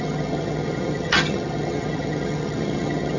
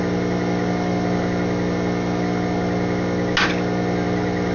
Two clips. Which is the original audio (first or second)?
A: second